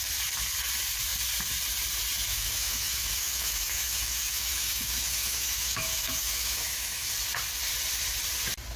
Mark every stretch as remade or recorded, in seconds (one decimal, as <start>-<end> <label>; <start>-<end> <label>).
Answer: 0.0-2.3 recorded; 2.3-7.1 remade; 7.1-8.8 recorded